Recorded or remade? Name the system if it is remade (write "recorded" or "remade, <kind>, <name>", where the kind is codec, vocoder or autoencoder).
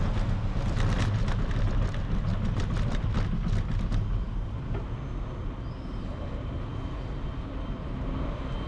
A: recorded